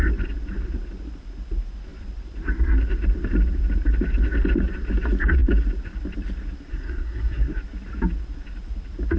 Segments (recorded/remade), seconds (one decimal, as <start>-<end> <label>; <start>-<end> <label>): 0.0-6.7 recorded; 6.7-7.6 remade; 7.6-9.2 recorded